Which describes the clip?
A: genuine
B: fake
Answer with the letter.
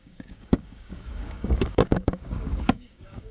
B